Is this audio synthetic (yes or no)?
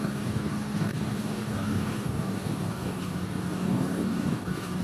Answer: yes